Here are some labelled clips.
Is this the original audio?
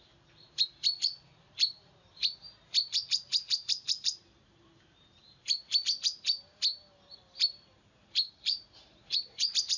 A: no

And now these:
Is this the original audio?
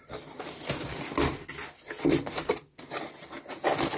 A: yes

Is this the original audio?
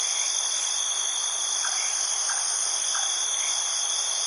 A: yes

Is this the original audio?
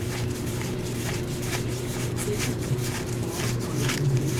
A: no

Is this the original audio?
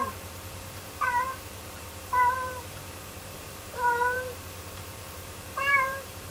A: no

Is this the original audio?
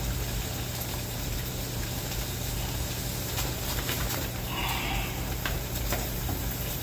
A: no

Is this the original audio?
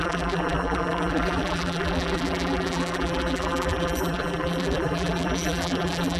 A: no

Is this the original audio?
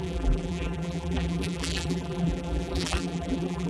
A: no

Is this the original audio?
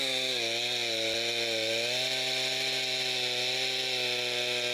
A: yes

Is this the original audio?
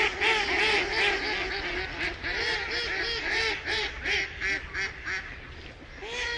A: yes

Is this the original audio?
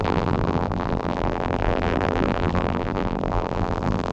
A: no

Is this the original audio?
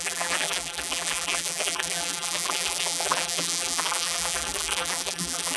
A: no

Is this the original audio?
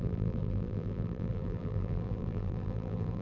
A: no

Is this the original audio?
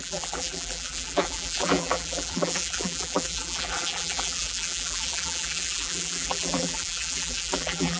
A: no